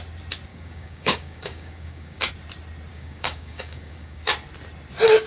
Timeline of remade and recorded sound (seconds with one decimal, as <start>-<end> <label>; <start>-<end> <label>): 0.0-0.5 recorded; 0.5-2.3 remade; 2.3-2.9 recorded; 2.9-4.3 remade; 4.3-5.3 recorded